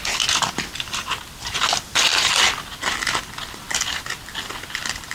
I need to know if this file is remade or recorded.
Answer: recorded